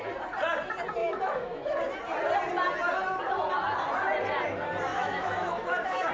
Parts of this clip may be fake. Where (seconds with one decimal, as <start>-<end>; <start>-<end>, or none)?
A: 1.0-1.8; 4.9-6.1